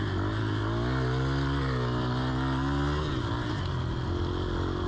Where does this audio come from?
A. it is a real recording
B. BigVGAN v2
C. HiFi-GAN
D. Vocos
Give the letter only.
A